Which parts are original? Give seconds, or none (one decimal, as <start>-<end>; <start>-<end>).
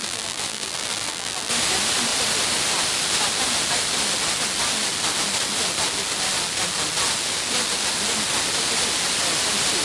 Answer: 1.5-9.8